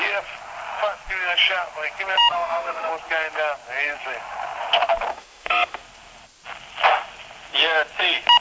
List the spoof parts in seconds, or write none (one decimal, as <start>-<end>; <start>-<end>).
2.2-2.9; 5.1-5.8